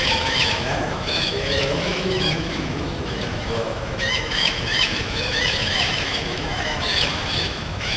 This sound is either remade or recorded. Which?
remade